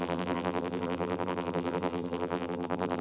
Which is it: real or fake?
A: fake